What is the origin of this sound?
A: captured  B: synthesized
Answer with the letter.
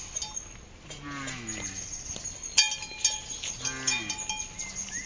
A